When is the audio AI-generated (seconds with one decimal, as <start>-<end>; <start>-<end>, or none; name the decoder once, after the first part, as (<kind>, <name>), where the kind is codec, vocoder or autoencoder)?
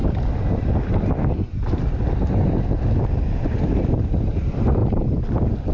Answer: none